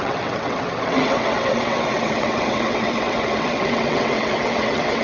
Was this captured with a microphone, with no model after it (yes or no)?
no